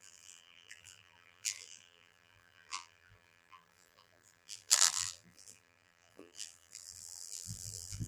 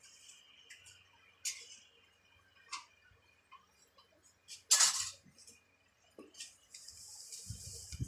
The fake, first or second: first